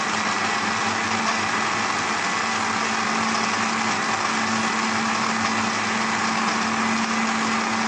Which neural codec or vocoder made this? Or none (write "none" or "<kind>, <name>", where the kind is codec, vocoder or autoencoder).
none